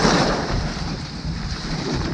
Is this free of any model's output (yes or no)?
no